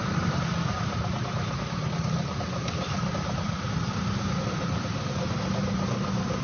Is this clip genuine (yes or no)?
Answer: no